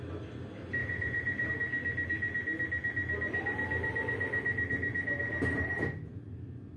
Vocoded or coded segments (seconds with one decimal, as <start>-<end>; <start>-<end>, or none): 0.8-1.5